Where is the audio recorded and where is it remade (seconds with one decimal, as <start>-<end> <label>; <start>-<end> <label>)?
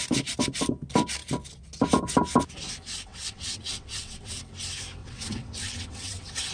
0.0-3.1 recorded; 3.1-4.4 remade; 4.4-5.0 recorded; 5.0-6.5 remade